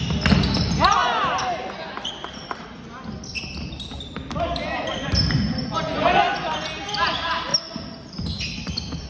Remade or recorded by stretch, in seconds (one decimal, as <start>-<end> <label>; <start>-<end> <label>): 0.0-9.1 recorded